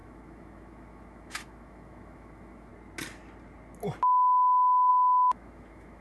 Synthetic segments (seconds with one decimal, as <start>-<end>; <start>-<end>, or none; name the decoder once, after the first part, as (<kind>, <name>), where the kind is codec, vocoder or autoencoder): 0.0-2.7 (autoencoder, DAC-VAE); 4.9-6.0